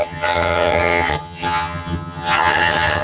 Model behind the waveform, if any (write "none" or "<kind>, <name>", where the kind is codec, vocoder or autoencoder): vocoder, HiFi-GAN